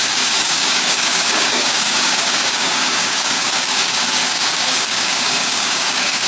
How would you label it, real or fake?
fake